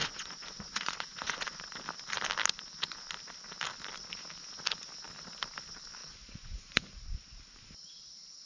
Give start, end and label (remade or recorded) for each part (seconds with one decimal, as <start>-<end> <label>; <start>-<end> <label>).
0.0-1.7 remade; 1.7-6.0 recorded; 6.0-6.9 remade; 6.9-8.5 recorded